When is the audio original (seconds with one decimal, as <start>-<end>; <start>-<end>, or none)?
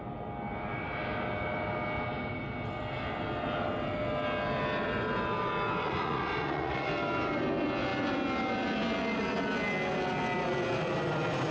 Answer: 0.0-5.8; 6.9-11.5